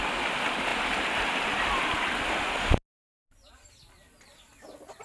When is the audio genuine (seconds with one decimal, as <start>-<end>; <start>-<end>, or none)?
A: 0.0-5.0